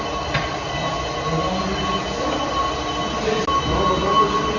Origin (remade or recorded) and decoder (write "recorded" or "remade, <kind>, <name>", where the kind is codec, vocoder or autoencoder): recorded